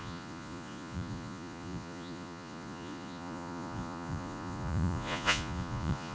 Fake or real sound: fake